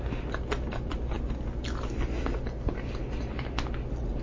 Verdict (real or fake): real